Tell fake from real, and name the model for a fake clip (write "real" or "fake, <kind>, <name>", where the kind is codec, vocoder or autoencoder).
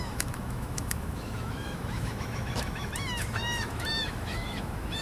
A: fake, autoencoder, DAC-VAE